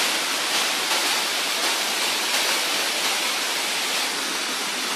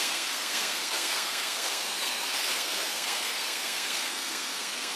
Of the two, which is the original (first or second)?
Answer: first